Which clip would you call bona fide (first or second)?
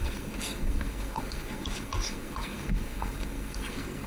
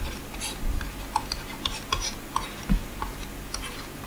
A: second